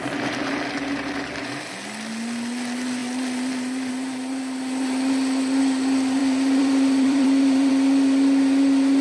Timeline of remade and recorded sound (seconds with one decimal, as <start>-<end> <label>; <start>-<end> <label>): 0.0-6.2 recorded; 6.2-7.7 remade; 7.7-9.0 recorded